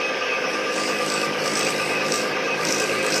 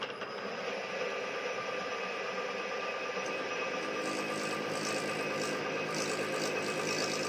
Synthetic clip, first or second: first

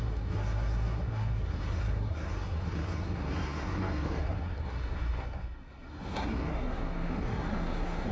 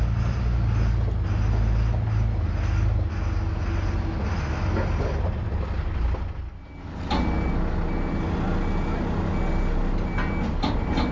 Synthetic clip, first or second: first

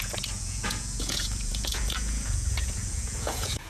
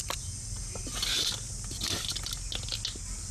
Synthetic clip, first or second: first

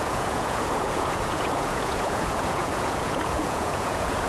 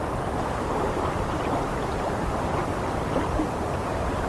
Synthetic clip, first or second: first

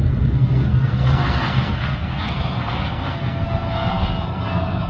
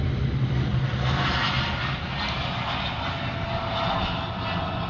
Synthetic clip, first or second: first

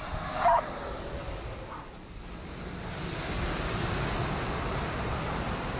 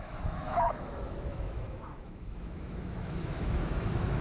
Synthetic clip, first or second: second